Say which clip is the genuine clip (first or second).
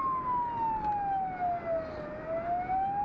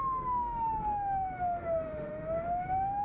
first